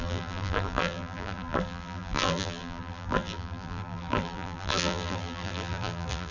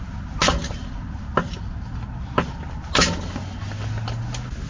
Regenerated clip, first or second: first